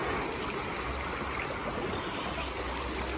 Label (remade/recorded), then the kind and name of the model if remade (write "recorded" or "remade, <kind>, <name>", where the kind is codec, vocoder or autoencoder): recorded